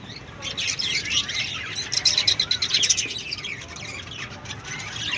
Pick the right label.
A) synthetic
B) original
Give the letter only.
B